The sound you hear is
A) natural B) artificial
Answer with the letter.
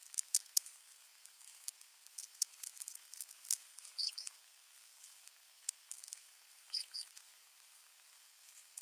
B